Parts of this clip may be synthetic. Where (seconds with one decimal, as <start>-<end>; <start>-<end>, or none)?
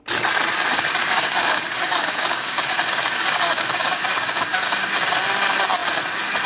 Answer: 1.0-4.9